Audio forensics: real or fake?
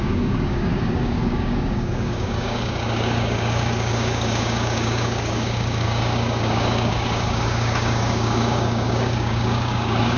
fake